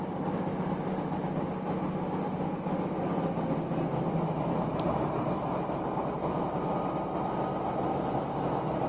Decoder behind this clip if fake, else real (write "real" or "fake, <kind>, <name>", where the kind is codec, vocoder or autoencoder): real